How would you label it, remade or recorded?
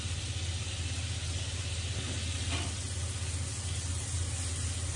recorded